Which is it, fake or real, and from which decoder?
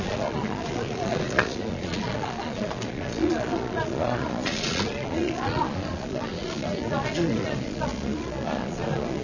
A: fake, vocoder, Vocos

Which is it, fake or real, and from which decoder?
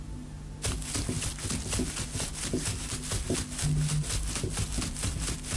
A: real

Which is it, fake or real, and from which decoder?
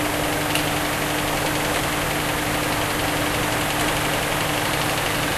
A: real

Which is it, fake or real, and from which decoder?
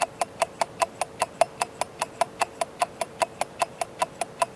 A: real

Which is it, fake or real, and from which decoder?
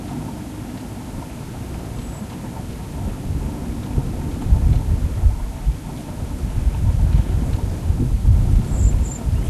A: real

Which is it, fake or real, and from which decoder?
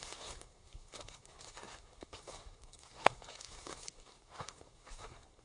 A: fake, codec, SNAC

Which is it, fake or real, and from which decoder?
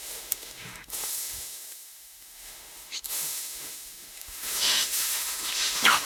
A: fake, autoencoder, DAC-VAE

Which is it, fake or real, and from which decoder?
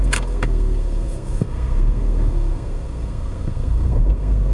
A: fake, codec, SNAC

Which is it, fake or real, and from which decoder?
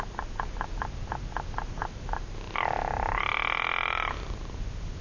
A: real